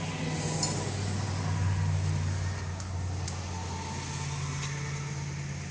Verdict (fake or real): real